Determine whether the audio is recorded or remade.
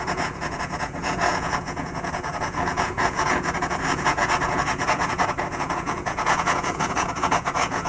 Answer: remade